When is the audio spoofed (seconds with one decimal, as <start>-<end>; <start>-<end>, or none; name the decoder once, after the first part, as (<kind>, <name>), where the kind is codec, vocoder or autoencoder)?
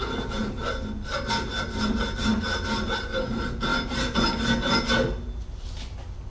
none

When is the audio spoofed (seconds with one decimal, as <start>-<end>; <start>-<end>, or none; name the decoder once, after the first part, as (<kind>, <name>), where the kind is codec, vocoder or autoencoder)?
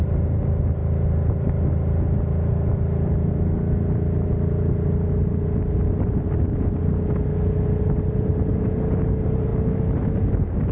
none